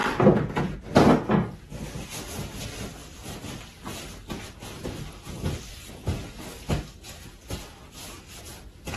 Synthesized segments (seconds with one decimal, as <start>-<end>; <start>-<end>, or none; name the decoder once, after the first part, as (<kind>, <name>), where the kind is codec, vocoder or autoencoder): none

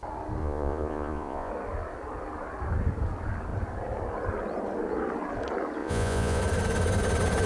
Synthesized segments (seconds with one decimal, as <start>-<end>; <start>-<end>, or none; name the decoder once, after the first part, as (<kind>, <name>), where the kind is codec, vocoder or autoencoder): 0.4-1.5 (vocoder, Vocos); 5.8-6.4

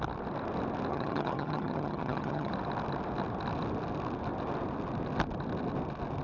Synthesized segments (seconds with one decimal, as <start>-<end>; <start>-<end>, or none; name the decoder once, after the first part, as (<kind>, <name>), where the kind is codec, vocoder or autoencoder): 0.9-2.5 (vocoder, HiFi-GAN)